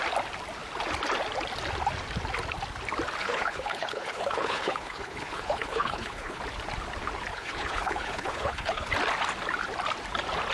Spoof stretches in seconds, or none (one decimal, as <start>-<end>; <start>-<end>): 3.2-6.4; 7.3-8.9